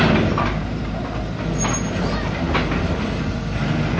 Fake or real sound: real